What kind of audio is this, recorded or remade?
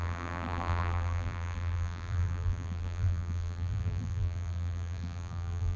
remade